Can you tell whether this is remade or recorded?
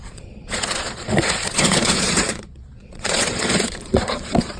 remade